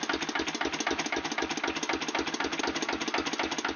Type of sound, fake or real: real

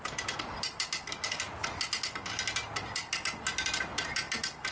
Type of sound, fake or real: real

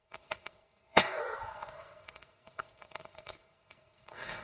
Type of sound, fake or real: fake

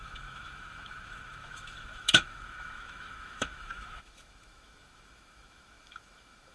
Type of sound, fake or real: fake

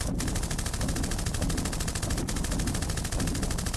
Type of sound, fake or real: fake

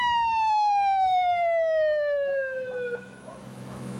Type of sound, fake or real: fake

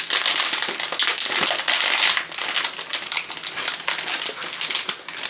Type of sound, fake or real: real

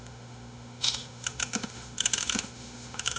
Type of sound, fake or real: fake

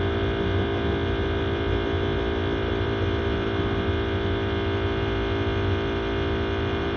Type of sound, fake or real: real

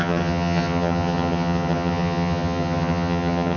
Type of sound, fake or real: fake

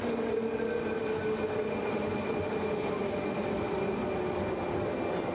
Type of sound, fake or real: real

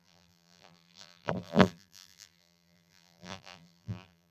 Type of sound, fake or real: fake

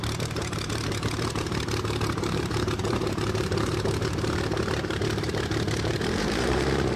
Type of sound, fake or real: fake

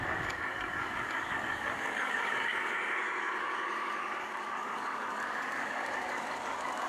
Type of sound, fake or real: fake